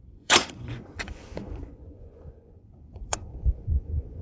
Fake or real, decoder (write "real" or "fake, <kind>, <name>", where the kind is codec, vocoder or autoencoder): fake, vocoder, Vocos